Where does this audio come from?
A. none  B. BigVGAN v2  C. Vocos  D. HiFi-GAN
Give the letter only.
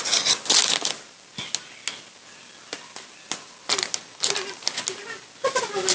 A